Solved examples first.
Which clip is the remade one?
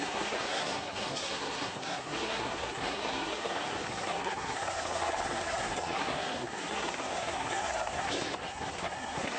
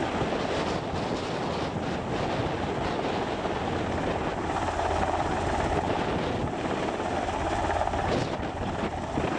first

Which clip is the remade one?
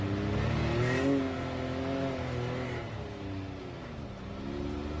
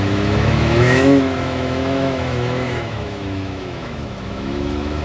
second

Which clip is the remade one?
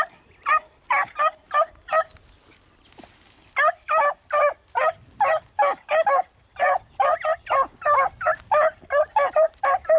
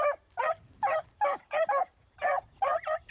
second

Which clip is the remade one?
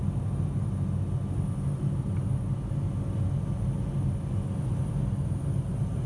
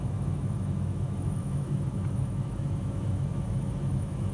second